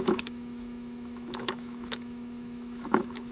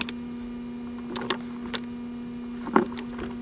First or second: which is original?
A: second